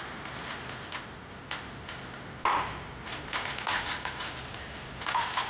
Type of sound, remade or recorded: recorded